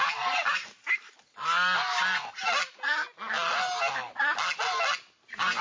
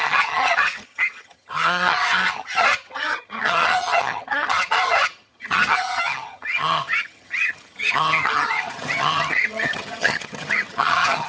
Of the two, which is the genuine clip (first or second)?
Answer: first